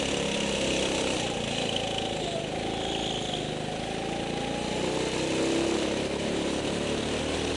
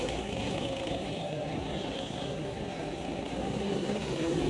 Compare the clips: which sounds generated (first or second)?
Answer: second